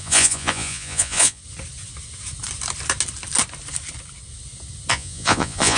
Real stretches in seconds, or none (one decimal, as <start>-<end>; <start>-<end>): 1.4-4.9